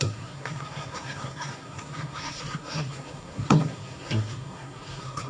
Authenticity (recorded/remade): remade